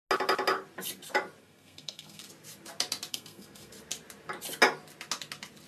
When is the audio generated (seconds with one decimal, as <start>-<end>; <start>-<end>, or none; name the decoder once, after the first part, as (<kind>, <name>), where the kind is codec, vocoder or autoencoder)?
1.4-2.3 (codec, SNAC); 3.1-3.7